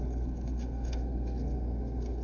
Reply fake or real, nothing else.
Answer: fake